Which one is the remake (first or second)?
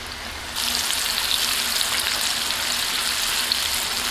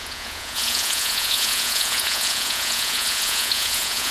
second